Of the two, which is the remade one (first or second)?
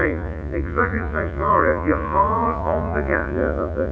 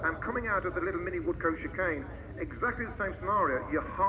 first